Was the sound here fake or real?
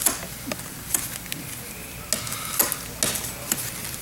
real